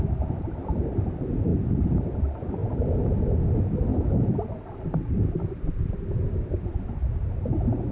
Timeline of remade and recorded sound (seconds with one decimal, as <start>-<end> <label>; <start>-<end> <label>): 0.0-2.6 recorded; 2.6-3.3 remade; 3.3-7.0 recorded; 7.0-7.9 remade